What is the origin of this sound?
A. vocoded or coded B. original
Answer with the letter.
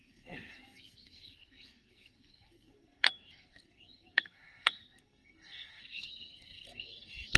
A